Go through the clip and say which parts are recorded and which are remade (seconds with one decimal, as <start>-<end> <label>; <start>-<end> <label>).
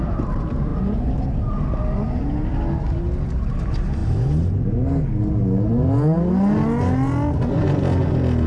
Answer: 0.0-8.5 recorded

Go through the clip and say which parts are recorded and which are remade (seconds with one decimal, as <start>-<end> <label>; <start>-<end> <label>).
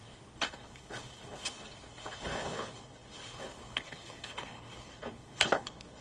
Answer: 0.0-6.0 remade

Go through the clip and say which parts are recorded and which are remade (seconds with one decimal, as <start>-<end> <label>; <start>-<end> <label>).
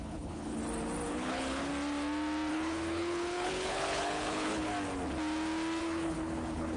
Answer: 0.0-0.6 remade; 0.6-1.1 recorded; 1.1-1.7 remade; 1.7-2.5 recorded; 2.5-4.7 remade; 4.7-5.8 recorded; 5.8-6.8 remade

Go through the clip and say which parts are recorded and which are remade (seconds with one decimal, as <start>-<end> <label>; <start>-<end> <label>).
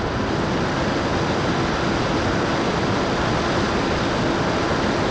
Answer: 0.0-5.1 recorded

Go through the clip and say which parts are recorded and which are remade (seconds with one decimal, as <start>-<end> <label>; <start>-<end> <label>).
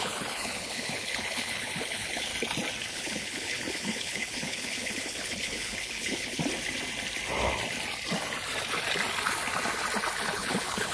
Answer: 0.0-2.3 remade; 2.3-2.9 recorded; 2.9-6.4 remade; 6.4-10.2 recorded; 10.2-10.9 remade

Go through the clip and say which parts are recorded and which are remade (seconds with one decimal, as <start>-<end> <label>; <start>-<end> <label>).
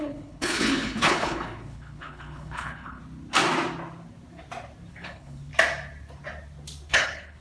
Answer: 0.0-3.0 remade; 3.0-4.9 recorded; 4.9-5.5 remade; 5.5-6.9 recorded; 6.9-7.4 remade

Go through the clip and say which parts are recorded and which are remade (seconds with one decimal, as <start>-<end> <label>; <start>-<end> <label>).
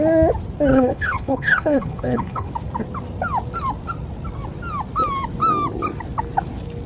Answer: 0.0-0.7 recorded; 0.7-2.5 remade; 2.5-6.9 recorded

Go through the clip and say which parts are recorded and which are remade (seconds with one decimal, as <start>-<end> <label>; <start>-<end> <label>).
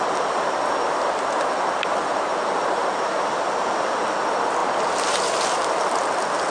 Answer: 0.0-6.5 recorded